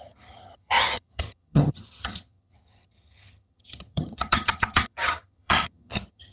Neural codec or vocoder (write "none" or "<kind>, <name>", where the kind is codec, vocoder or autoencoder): vocoder, HiFi-GAN